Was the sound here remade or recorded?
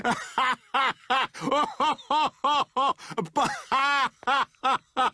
recorded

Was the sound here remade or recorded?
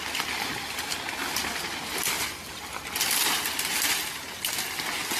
recorded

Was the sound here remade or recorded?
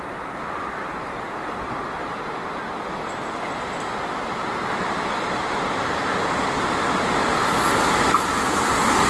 recorded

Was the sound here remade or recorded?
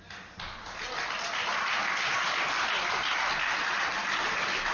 recorded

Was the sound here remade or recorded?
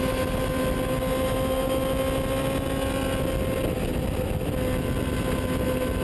recorded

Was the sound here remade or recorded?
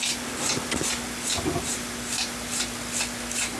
recorded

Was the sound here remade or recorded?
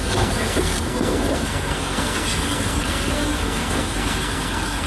remade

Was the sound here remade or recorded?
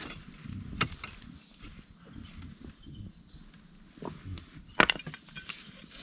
recorded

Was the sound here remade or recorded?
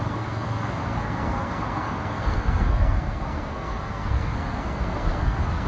remade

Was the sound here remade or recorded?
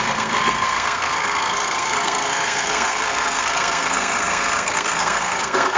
remade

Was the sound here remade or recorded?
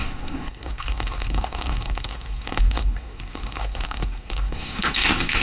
remade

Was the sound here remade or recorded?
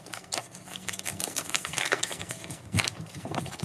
remade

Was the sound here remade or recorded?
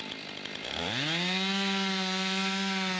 recorded